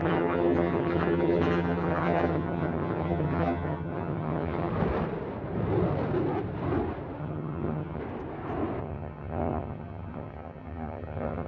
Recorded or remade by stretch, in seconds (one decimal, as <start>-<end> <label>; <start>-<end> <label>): 0.0-4.7 remade; 4.7-7.2 recorded; 7.2-8.0 remade; 8.0-8.8 recorded; 8.8-11.5 remade